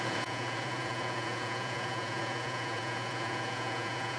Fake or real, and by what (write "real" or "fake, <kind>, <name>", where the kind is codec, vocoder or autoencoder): fake, vocoder, Vocos